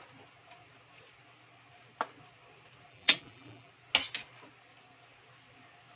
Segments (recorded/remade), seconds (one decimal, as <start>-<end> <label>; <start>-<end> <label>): 0.0-2.9 recorded; 2.9-3.7 remade; 3.7-6.0 recorded